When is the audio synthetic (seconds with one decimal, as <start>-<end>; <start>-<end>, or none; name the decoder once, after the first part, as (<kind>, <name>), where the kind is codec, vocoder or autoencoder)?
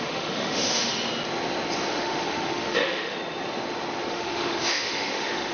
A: 0.0-0.9 (autoencoder, DAC-VAE); 1.9-3.2; 4.1-5.5